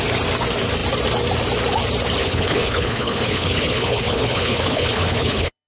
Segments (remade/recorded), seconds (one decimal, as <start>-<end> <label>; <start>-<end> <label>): 0.0-2.2 recorded; 2.2-5.7 remade